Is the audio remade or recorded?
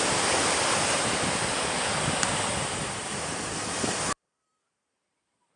recorded